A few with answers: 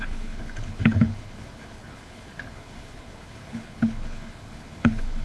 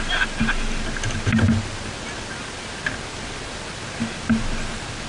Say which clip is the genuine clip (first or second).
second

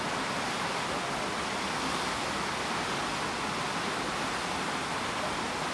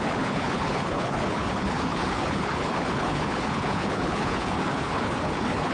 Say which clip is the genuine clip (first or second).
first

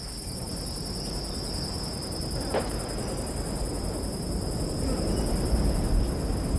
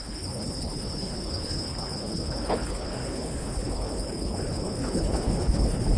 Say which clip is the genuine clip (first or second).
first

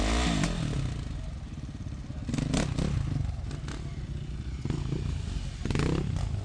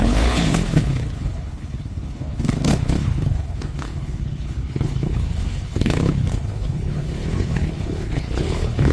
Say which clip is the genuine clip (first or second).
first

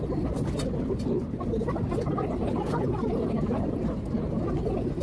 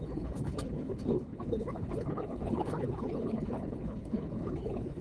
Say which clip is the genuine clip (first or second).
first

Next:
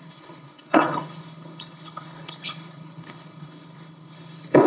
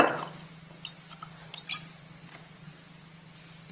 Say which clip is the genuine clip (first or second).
second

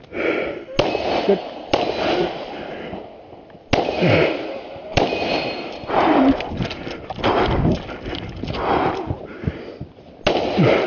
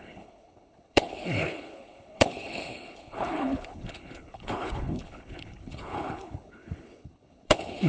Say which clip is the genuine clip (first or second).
first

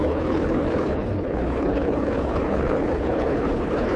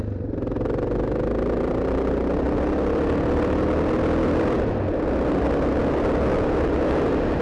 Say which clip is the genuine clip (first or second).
second